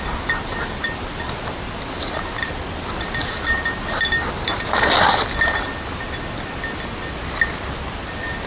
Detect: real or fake real